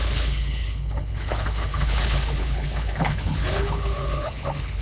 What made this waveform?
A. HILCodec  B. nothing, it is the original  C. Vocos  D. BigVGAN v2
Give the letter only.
A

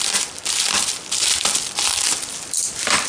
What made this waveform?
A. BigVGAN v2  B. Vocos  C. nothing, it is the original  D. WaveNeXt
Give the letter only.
A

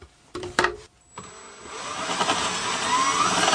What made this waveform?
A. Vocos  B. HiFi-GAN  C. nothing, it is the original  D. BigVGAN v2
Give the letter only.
C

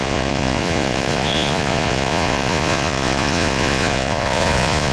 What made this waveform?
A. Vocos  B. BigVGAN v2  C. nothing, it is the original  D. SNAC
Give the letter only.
A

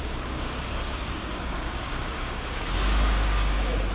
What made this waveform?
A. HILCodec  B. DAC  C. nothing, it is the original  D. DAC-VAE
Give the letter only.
B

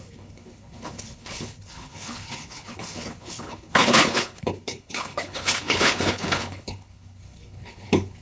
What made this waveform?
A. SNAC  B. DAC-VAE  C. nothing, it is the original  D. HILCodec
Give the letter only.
D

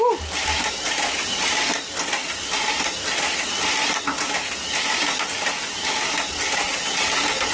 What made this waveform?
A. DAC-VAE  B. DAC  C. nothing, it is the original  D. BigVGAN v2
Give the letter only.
C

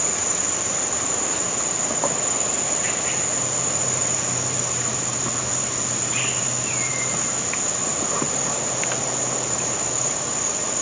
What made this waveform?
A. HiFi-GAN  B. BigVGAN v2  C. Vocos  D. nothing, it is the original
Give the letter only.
D